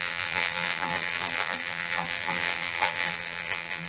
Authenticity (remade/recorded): remade